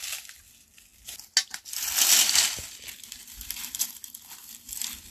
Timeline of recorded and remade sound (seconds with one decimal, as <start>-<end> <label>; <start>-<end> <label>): 0.0-5.1 recorded